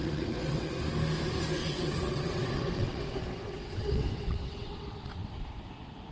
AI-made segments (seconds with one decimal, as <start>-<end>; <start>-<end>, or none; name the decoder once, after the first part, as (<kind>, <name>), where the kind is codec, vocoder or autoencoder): 0.0-0.8 (vocoder, WaveNeXt); 1.6-5.3